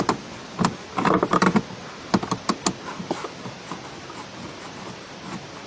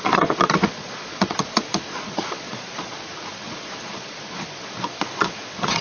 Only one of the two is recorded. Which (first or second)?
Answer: first